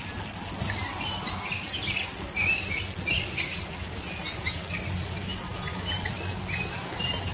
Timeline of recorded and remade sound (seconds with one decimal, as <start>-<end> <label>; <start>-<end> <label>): 0.0-7.3 recorded